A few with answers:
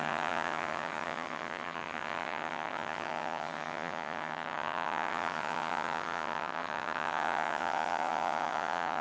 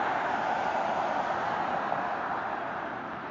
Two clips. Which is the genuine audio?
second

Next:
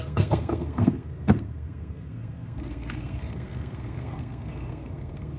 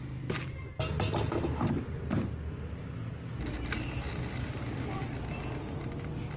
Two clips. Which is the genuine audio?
second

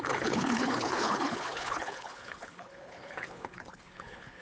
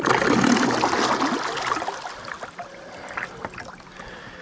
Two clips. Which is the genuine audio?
second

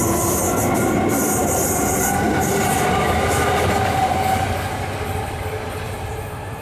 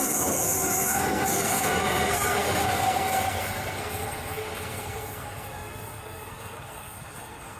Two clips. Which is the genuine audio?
first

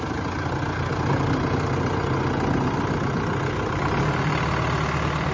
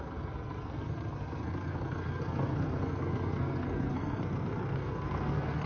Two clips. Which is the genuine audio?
first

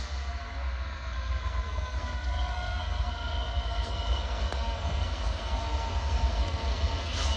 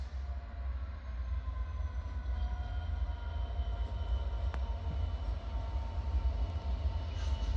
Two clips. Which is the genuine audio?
second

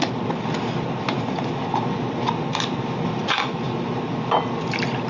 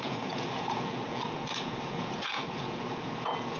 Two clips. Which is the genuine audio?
first